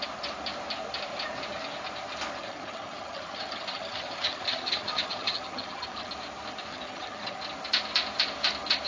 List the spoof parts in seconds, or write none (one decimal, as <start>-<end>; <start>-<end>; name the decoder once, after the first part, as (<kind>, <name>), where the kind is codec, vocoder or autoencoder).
2.4-6.1 (vocoder, HiFi-GAN); 6.7-7.4